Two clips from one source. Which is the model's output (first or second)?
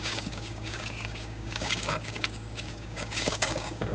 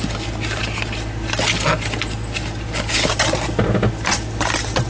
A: first